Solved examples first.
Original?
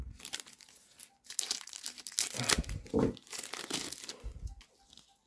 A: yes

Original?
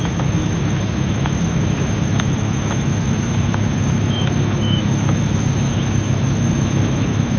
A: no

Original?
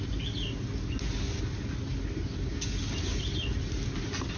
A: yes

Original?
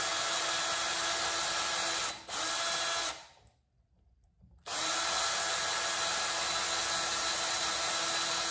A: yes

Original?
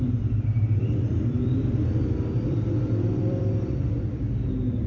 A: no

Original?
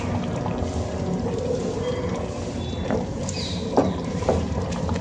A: no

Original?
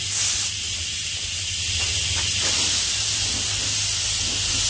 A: yes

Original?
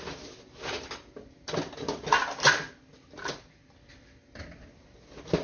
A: yes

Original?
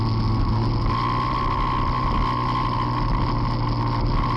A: yes